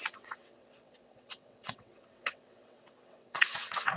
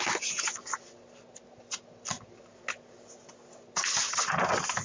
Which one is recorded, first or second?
second